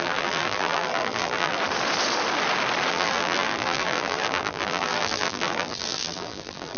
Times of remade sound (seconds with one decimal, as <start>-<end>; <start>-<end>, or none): 0.0-1.6; 2.9-6.8